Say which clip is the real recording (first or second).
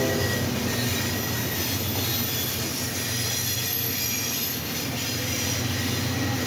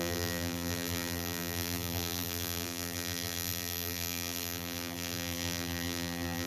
first